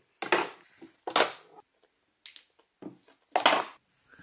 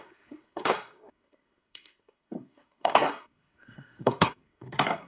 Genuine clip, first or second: first